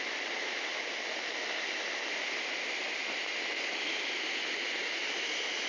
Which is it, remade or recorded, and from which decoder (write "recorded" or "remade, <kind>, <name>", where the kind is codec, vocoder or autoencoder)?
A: recorded